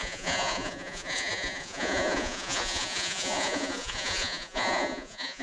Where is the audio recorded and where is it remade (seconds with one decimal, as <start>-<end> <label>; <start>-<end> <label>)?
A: 0.0-5.4 remade